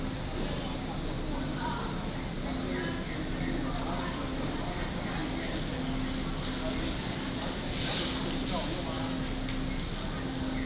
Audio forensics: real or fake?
real